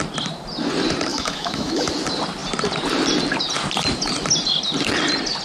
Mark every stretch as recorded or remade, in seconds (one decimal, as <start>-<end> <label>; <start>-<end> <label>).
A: 0.0-1.1 recorded; 1.1-1.9 remade; 1.9-5.4 recorded